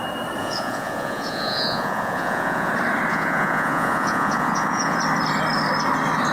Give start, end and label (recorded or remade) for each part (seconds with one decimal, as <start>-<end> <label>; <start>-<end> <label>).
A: 0.0-0.4 recorded; 0.4-2.7 remade; 2.7-3.1 recorded; 3.1-5.0 remade; 5.0-6.3 recorded